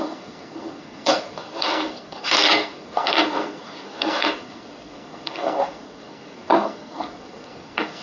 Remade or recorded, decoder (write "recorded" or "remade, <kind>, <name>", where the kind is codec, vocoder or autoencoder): remade, codec, SNAC